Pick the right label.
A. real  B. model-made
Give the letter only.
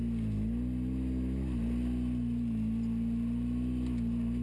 A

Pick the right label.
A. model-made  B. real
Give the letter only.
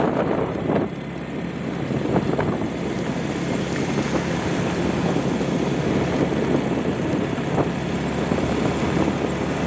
B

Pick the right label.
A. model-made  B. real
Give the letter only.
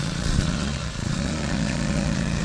A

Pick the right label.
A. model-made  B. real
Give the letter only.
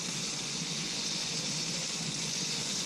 A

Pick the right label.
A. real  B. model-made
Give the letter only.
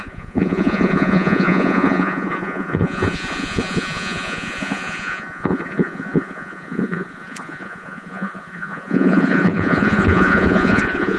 B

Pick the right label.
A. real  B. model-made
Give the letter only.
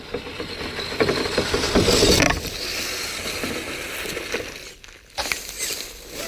A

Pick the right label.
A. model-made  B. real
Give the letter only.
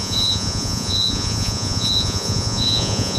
A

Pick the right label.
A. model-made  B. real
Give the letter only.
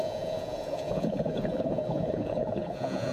A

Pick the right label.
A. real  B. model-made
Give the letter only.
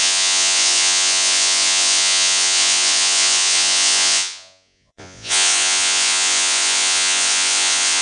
B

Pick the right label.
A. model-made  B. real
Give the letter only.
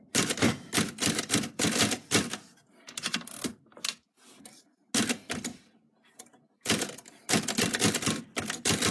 B